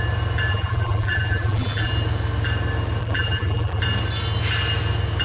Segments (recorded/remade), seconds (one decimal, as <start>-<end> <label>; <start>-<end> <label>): 0.0-0.5 recorded; 0.5-1.9 remade; 1.9-3.0 recorded; 3.0-3.8 remade; 3.8-5.2 recorded